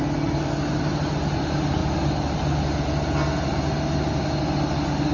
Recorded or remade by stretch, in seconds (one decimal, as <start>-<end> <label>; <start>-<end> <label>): 0.0-5.1 recorded